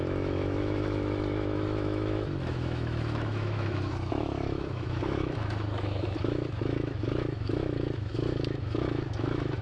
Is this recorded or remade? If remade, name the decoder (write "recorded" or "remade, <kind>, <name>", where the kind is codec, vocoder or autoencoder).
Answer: remade, autoencoder, DAC-VAE